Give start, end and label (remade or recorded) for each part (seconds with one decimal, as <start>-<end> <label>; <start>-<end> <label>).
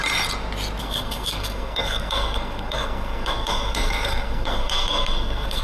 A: 0.0-0.8 recorded; 0.8-5.6 remade